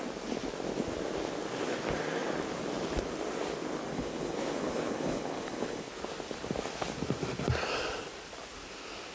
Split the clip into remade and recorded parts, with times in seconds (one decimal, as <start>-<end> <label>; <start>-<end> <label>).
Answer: 0.0-3.9 recorded; 3.9-5.8 remade; 5.8-9.1 recorded